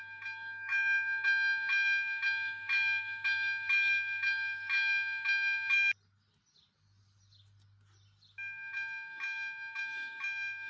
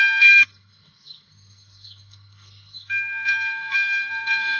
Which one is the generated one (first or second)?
second